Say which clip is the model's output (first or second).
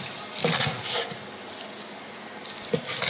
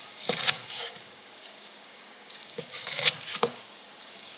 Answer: second